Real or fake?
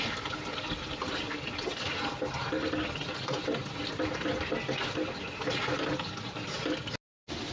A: real